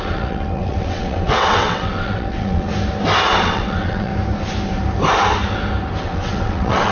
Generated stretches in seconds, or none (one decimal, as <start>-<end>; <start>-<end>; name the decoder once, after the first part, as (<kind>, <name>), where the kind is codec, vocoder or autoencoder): 0.0-2.7 (vocoder, WaveNeXt); 3.4-4.1; 6.0-6.9